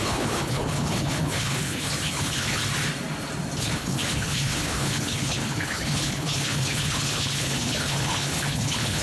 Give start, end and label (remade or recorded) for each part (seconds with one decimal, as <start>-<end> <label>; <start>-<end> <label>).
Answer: 0.0-2.6 remade; 2.6-3.6 recorded; 3.6-9.0 remade